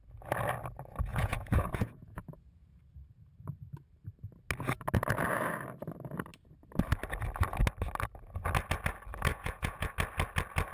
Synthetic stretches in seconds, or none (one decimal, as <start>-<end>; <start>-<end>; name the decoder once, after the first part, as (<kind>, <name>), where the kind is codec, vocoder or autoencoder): 1.1-2.8 (vocoder, Vocos); 9.3-9.9